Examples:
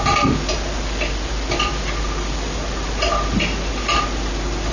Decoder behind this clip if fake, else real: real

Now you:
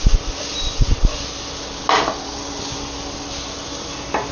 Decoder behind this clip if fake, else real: real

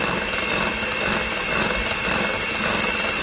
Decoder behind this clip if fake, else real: real